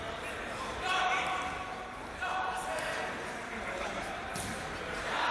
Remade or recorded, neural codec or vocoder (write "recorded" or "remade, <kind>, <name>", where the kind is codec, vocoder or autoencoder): remade, vocoder, BigVGAN v2